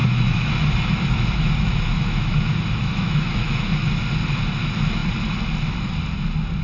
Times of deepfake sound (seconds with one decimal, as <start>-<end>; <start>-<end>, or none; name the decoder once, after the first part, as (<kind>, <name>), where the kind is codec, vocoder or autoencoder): 0.0-4.0 (autoencoder, DAC-VAE)